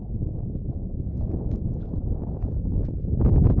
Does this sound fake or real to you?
fake